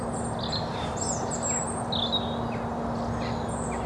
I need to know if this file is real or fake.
real